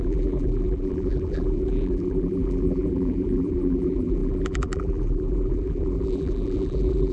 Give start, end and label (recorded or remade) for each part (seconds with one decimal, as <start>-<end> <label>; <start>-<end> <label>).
0.0-7.1 remade